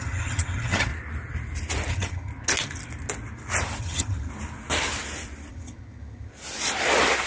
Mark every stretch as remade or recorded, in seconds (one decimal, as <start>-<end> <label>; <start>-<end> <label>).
0.0-0.9 remade; 0.9-1.9 recorded; 1.9-2.3 remade; 2.3-3.8 recorded; 3.8-4.3 remade; 4.3-5.5 recorded; 5.5-6.3 remade; 6.3-7.3 recorded